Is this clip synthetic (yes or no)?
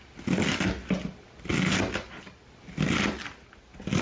no